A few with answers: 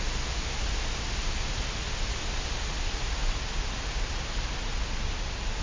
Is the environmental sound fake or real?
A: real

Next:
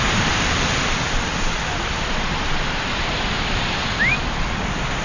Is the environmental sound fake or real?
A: fake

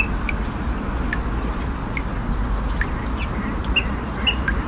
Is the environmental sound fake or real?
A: real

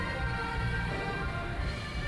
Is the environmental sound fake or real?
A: fake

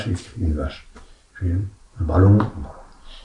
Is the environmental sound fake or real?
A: real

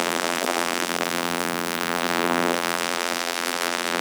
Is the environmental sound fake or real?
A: fake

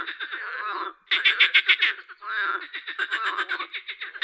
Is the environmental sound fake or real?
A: real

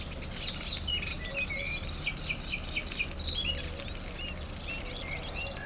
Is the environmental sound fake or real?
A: real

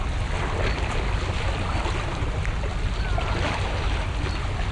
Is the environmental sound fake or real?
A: real